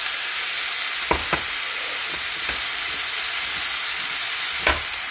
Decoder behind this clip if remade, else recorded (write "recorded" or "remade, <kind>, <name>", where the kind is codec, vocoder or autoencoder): recorded